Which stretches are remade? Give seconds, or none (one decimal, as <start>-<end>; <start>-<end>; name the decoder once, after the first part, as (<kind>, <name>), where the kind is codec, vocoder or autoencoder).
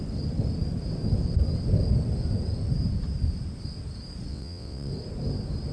4.3-4.9 (vocoder, WaveNeXt)